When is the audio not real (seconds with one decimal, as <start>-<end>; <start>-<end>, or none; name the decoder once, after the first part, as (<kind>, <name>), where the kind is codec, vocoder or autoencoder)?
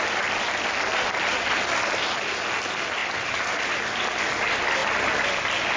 none